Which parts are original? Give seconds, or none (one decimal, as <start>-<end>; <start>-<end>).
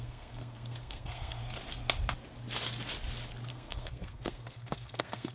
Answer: 1.4-3.5